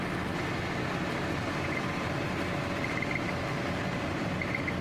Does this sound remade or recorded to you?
recorded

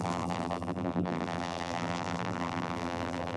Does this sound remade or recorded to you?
remade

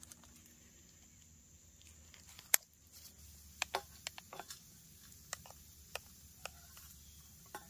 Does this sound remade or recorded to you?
recorded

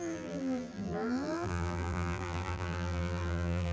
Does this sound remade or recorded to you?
remade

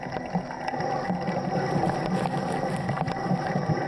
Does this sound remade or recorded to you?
recorded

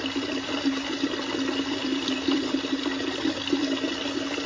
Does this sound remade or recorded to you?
recorded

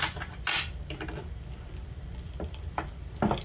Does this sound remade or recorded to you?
recorded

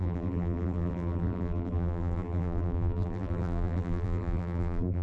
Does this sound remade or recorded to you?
remade